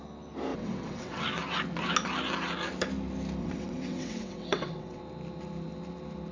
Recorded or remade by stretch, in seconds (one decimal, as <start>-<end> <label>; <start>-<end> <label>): 0.0-0.5 recorded; 0.5-1.2 remade; 1.2-3.4 recorded; 3.4-5.0 remade; 5.0-6.3 recorded